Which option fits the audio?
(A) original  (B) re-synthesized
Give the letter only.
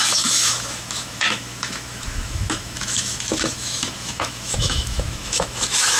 B